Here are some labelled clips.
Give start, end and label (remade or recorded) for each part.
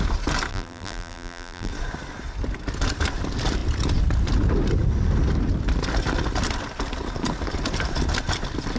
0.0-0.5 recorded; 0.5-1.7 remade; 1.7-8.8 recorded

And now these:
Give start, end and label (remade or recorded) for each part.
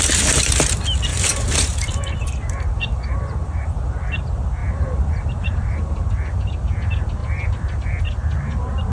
0.0-1.1 recorded; 1.1-3.7 remade; 3.7-4.6 recorded; 4.6-6.0 remade; 6.0-7.2 recorded; 7.2-8.0 remade; 8.0-8.9 recorded